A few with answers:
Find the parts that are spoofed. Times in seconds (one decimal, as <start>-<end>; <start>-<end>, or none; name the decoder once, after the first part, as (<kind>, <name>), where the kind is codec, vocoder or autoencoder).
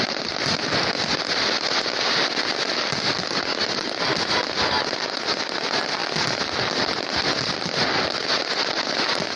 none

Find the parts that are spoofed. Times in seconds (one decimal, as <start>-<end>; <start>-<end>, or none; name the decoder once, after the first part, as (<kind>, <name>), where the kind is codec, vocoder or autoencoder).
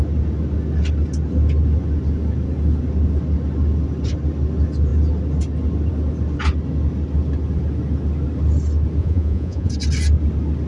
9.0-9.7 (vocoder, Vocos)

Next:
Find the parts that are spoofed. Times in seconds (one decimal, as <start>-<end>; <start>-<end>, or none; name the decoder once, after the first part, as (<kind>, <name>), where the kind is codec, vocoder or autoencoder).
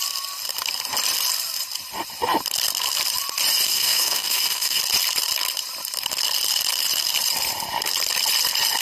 3.7-4.8 (codec, DAC)